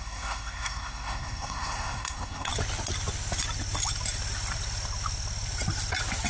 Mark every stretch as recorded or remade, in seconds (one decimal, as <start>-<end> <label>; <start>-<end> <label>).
0.0-2.5 remade; 2.5-6.3 recorded